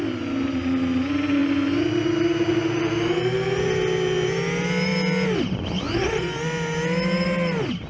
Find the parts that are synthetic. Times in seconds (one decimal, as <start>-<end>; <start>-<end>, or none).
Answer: none